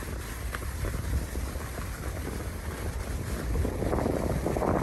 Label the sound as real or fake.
real